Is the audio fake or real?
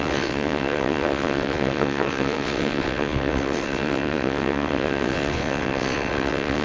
fake